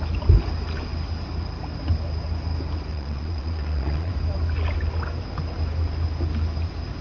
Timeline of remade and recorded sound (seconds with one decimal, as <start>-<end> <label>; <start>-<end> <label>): 0.0-2.9 recorded; 2.9-4.1 remade; 4.1-7.0 recorded